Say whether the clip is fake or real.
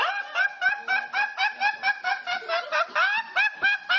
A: real